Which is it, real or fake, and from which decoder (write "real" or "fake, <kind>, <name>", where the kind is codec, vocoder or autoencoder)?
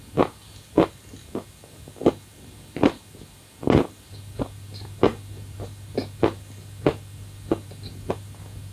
real